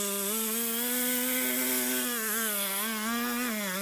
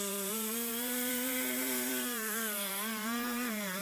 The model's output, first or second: second